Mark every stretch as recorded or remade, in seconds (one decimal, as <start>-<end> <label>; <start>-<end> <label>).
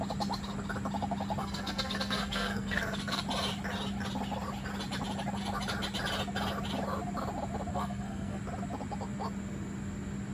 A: 0.0-1.4 recorded; 1.4-3.2 remade; 3.2-7.7 recorded; 7.7-8.4 remade; 8.4-10.3 recorded